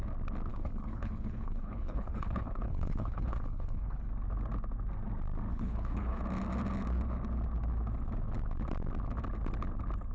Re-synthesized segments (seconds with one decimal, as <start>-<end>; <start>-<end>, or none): 0.5-4.1; 5.5-6.2